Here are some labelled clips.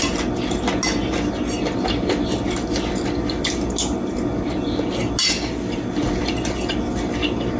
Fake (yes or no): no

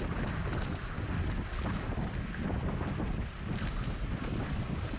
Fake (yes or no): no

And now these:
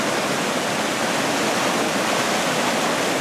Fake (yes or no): no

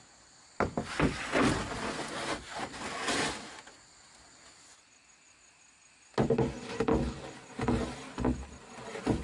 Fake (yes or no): no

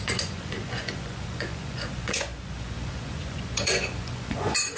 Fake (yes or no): yes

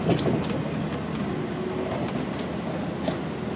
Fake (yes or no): no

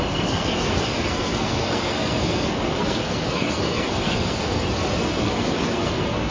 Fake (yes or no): yes